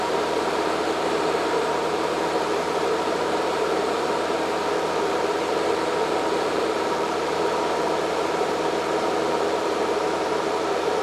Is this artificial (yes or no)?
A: yes